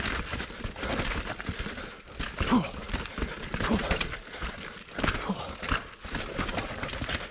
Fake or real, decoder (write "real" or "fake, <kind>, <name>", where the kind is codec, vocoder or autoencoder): fake, vocoder, BigVGAN v2